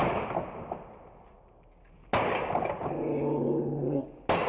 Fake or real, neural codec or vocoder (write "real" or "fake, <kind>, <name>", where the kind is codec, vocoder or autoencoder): real